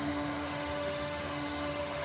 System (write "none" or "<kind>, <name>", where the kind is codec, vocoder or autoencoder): autoencoder, DAC-VAE